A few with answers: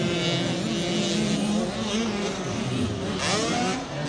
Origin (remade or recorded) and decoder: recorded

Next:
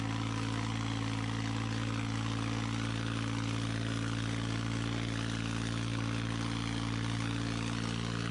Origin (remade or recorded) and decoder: recorded